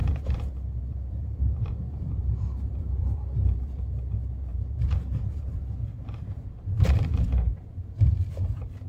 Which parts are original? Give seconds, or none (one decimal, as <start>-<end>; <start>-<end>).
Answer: 3.8-4.5; 8.3-8.9